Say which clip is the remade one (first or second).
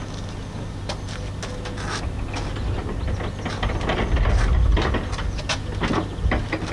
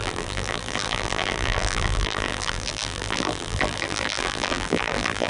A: second